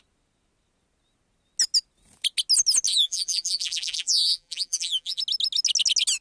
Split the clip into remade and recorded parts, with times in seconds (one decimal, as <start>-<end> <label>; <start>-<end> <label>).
0.0-2.9 recorded; 2.9-5.2 remade; 5.2-6.2 recorded